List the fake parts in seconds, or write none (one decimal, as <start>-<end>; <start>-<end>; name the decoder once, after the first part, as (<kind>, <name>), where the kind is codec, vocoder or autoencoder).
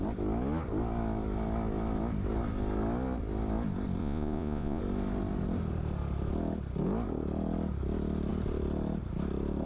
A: 4.0-4.8 (vocoder, Vocos)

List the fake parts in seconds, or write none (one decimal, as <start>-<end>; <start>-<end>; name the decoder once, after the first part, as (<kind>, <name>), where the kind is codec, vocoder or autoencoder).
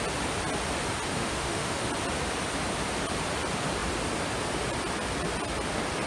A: 1.1-1.9 (autoencoder, DAC-VAE)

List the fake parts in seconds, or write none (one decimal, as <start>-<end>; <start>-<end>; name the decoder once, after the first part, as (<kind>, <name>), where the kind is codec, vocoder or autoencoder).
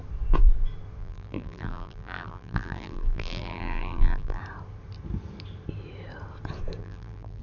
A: 1.0-4.4 (vocoder, BigVGAN v2); 6.8-7.4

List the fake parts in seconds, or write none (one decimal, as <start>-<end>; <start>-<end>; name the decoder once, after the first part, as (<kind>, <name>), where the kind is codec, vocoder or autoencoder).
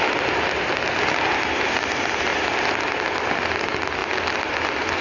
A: none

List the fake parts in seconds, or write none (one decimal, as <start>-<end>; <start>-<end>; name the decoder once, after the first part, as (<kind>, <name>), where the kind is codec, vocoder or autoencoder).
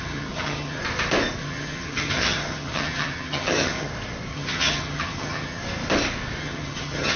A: 0.0-0.8 (vocoder, HiFi-GAN); 1.4-3.9; 4.3-5.6; 6.4-7.2